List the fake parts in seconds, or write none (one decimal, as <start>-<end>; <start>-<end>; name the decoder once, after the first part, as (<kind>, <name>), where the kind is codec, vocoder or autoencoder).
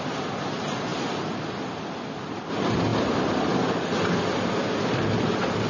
none